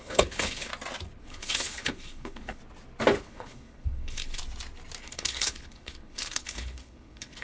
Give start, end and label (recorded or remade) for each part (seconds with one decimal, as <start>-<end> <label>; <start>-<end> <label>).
0.0-0.7 remade; 0.7-1.2 recorded; 1.2-2.6 remade; 2.6-3.2 recorded; 3.2-4.4 remade; 4.4-5.0 recorded; 5.0-7.4 remade